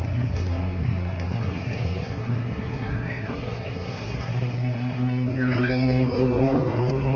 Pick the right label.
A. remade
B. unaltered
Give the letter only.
A